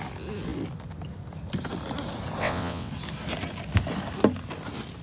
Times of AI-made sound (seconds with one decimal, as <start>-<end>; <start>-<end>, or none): 2.4-2.9